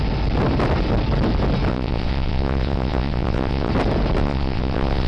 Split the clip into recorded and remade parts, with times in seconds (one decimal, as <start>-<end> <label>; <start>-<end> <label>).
0.0-1.7 recorded; 1.7-3.7 remade; 3.7-4.2 recorded; 4.2-5.1 remade